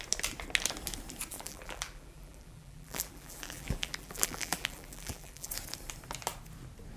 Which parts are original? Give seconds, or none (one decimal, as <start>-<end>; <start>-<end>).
0.0-1.3; 5.5-7.0